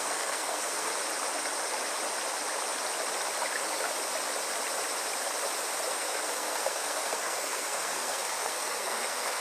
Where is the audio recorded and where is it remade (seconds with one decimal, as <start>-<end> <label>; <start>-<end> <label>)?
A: 0.0-0.9 remade; 0.9-5.9 recorded; 5.9-9.4 remade